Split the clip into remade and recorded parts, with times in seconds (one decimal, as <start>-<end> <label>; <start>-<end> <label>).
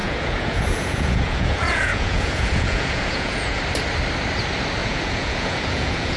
0.0-3.6 remade; 3.6-4.8 recorded; 4.8-6.2 remade